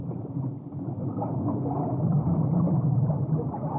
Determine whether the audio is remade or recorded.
recorded